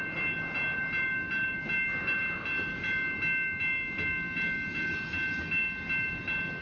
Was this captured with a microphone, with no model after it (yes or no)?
yes